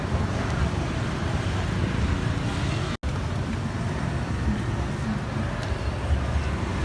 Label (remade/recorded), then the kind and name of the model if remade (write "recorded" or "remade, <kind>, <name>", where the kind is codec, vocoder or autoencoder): recorded